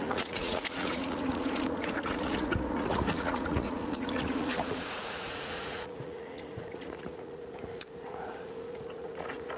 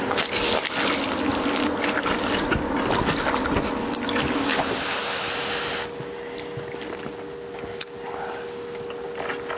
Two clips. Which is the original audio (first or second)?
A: second